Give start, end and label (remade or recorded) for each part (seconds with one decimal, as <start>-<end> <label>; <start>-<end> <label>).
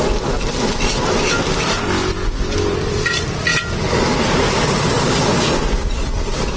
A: 0.0-2.0 remade; 2.0-2.8 recorded; 2.8-6.6 remade